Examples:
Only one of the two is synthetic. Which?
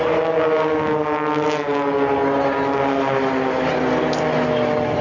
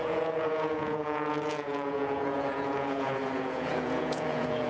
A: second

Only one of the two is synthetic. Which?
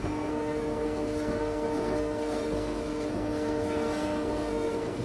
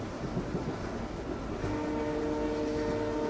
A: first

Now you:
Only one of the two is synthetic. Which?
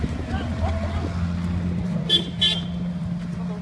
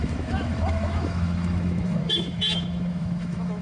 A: second